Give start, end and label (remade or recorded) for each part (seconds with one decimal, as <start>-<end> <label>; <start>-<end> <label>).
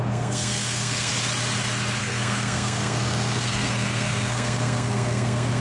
0.0-1.1 remade; 1.1-2.0 recorded; 2.0-5.6 remade